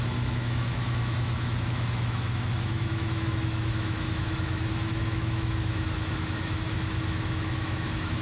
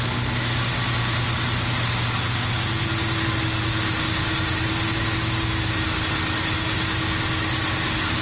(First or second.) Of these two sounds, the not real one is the first